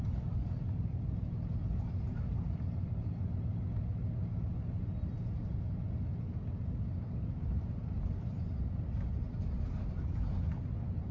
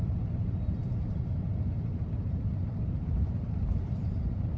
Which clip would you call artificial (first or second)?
second